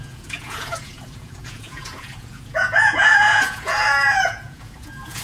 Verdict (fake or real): fake